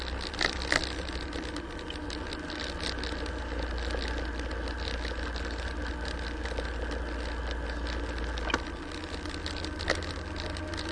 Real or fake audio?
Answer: real